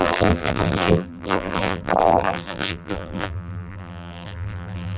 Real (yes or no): no